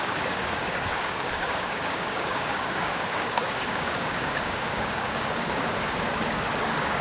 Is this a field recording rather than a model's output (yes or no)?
no